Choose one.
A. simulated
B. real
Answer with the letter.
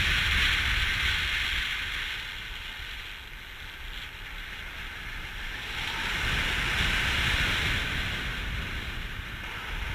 B